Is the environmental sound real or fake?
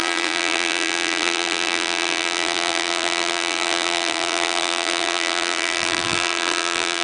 fake